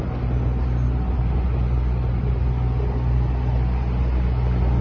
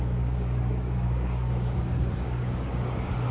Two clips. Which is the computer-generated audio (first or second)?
second